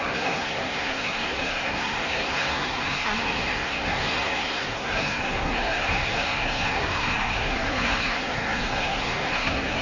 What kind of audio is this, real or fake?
fake